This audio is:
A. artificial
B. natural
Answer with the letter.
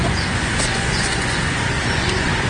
A